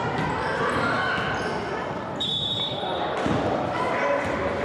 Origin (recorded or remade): recorded